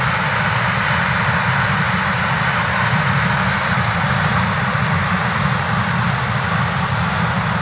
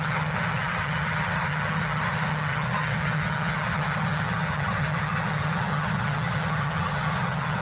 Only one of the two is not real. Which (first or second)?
second